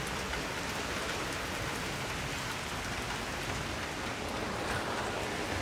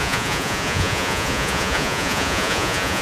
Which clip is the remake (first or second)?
second